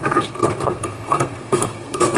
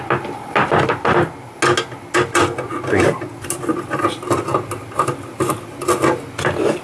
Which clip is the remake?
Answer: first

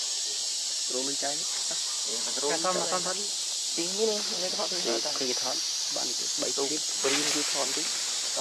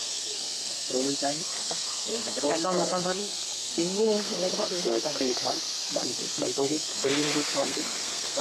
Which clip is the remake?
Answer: second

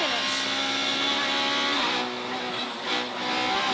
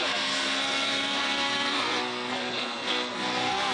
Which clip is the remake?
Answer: second